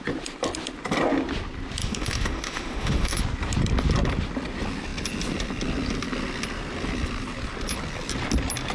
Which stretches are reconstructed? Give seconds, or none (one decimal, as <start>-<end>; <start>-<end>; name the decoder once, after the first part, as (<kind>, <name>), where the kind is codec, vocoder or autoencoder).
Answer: 1.8-3.2 (autoencoder, DAC-VAE)